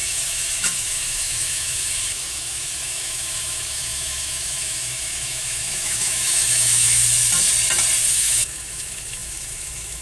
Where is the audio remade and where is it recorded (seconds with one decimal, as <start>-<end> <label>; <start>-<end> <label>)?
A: 0.0-7.0 remade; 7.0-8.1 recorded; 8.1-10.0 remade